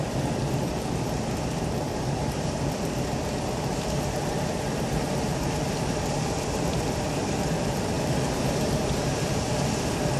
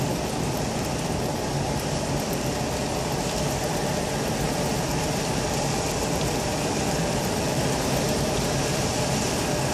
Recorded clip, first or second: second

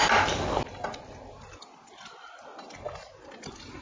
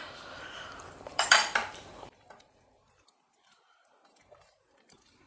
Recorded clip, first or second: first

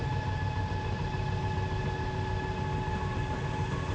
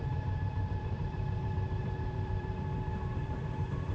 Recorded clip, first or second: first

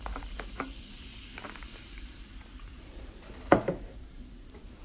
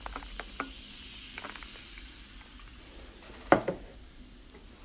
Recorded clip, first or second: second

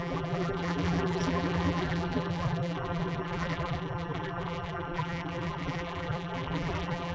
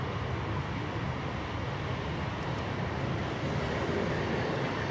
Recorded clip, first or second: second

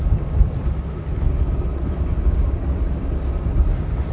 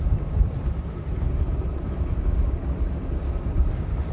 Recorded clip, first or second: first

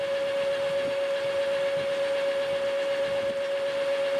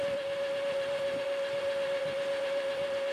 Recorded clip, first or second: first